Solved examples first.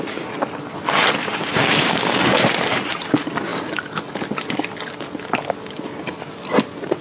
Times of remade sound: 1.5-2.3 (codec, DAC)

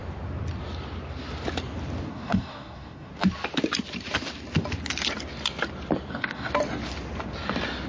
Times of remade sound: 2.1-3.1 (codec, DAC); 6.1-6.5

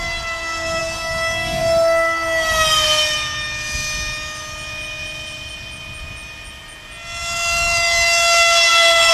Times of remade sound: 0.8-1.6 (codec, DAC)

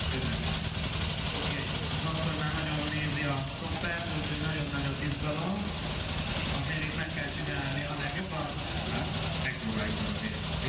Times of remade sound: 3.4-5.9 (codec, DAC); 7.7-8.2